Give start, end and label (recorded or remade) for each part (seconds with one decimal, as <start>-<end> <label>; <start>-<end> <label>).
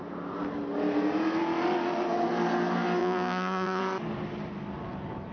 0.0-3.0 recorded; 3.0-3.8 remade; 3.8-5.3 recorded